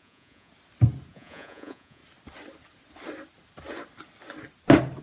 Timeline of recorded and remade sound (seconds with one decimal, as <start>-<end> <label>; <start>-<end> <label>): 0.0-0.5 remade; 0.5-1.1 recorded; 1.1-2.0 remade; 2.0-5.0 recorded